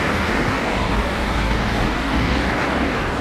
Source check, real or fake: fake